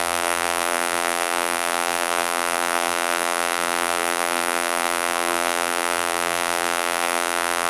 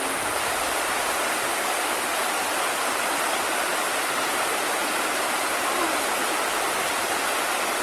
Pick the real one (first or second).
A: second